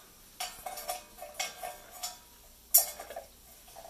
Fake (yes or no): no